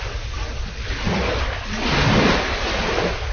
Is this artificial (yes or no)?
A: no